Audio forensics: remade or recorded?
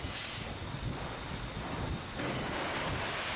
recorded